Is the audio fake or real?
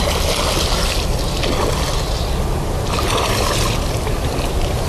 real